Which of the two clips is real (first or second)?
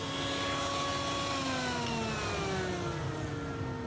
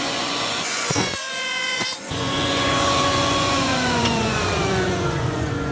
first